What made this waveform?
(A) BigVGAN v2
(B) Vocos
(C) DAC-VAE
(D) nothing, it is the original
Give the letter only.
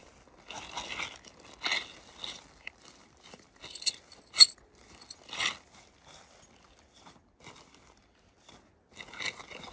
D